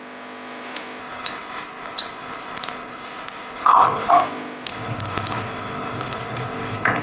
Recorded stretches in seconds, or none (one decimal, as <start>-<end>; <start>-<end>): 0.0-1.0; 4.1-4.7